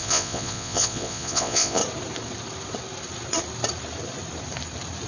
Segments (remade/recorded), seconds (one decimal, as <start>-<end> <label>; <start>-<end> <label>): 0.0-1.8 remade; 1.8-5.1 recorded